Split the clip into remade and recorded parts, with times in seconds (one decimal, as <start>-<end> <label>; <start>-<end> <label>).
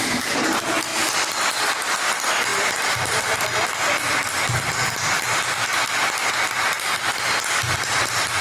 0.0-2.5 recorded; 2.5-6.3 remade; 6.3-8.4 recorded